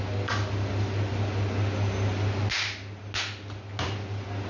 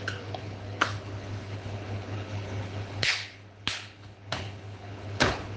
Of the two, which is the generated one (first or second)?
second